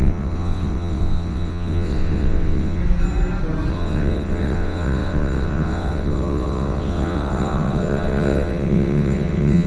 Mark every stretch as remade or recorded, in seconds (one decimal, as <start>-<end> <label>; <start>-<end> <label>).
0.0-2.8 remade; 2.8-3.7 recorded; 3.7-9.7 remade